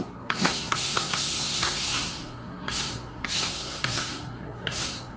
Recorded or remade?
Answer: remade